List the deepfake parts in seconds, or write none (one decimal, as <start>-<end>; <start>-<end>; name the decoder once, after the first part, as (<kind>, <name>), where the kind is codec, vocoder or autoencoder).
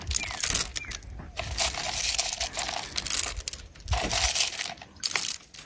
none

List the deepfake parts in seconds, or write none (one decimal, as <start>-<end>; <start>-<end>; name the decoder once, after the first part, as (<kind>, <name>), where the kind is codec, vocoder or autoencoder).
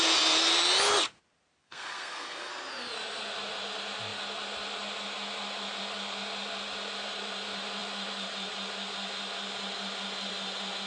1.6-2.5 (codec, SNAC)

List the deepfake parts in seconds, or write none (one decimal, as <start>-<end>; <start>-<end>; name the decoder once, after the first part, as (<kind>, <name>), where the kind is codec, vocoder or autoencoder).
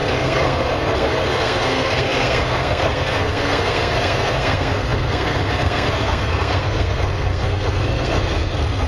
0.0-8.9 (codec, SNAC)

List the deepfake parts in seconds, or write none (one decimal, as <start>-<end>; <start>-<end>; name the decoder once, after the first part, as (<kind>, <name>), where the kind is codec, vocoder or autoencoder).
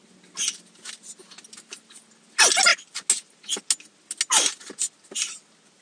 none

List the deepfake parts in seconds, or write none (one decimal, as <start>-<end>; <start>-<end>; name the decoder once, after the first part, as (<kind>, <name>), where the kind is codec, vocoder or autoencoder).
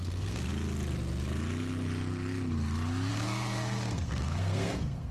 0.0-0.5 (codec, SNAC); 3.1-5.1